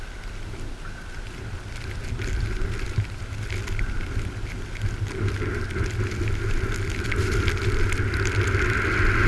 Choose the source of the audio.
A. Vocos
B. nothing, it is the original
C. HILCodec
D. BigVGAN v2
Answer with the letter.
B